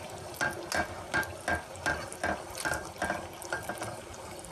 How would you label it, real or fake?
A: real